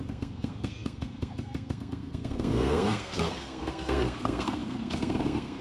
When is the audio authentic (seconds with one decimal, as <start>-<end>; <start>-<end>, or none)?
none